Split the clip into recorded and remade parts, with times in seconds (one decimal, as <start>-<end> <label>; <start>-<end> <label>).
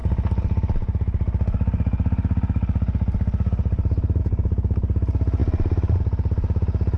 0.0-7.0 recorded